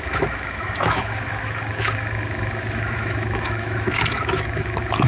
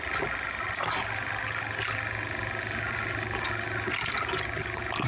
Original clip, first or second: second